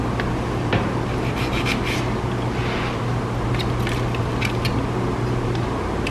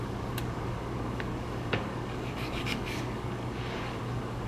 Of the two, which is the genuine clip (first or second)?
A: first